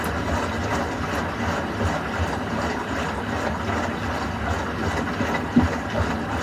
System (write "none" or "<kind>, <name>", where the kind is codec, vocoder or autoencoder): none